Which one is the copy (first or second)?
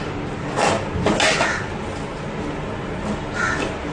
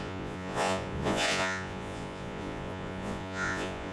second